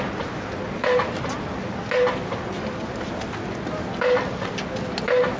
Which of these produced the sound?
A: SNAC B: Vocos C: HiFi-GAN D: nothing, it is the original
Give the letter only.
D